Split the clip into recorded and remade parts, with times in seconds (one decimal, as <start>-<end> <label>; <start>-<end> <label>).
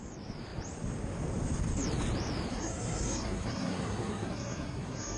0.0-2.5 recorded; 2.5-5.2 remade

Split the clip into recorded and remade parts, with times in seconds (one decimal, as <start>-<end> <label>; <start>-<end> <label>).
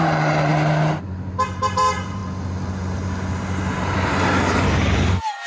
0.0-0.5 remade; 0.5-1.6 recorded; 1.6-2.2 remade; 2.2-4.8 recorded; 4.8-5.5 remade